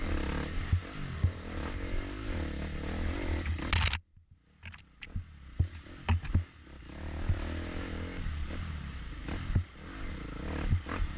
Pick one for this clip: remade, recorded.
recorded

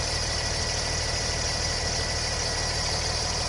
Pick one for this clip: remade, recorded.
recorded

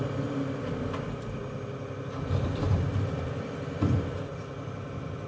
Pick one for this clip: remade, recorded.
recorded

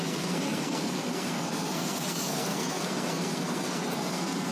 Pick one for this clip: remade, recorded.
remade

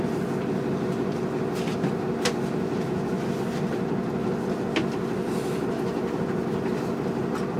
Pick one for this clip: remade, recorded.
recorded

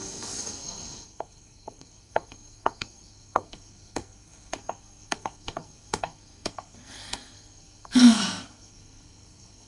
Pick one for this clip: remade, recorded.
remade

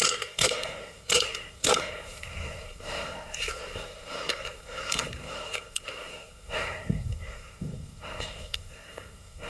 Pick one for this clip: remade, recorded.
remade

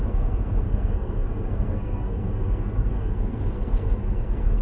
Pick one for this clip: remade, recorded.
remade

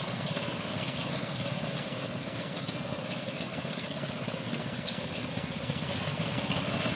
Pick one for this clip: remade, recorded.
remade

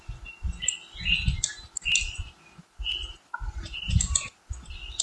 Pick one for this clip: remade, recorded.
recorded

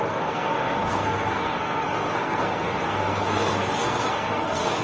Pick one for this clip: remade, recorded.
remade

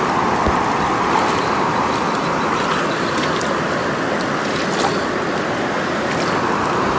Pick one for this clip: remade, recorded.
recorded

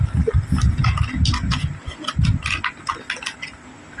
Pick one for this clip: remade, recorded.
recorded